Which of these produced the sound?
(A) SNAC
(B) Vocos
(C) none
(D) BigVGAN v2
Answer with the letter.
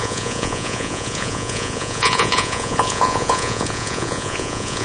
B